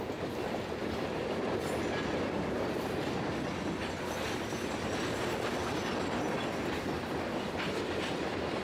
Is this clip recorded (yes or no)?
yes